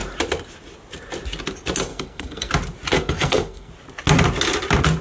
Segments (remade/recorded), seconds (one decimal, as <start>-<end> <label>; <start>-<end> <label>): 0.0-1.9 recorded; 1.9-2.5 remade; 2.5-2.9 recorded; 2.9-3.7 remade; 3.7-5.0 recorded